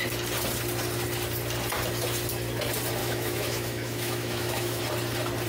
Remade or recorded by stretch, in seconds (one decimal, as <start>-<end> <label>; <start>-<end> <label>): 0.0-3.0 recorded; 3.0-4.8 remade; 4.8-5.5 recorded

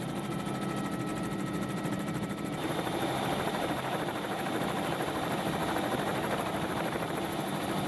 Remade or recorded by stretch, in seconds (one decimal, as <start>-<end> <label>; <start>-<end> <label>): 0.0-1.1 recorded; 1.1-5.5 remade; 5.5-6.1 recorded; 6.1-7.1 remade; 7.1-7.9 recorded

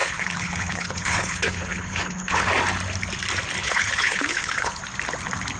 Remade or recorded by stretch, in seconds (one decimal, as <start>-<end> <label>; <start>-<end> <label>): 0.0-2.5 remade; 2.5-3.6 recorded; 3.6-4.8 remade; 4.8-5.6 recorded

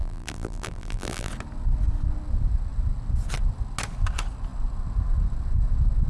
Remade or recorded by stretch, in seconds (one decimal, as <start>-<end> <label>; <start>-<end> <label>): 0.0-1.3 remade; 1.3-6.1 recorded

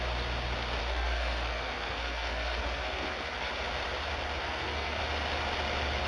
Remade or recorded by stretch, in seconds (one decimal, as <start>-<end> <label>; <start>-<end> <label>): 0.0-0.8 recorded; 0.8-3.5 remade; 3.5-4.4 recorded; 4.4-5.0 remade; 5.0-6.1 recorded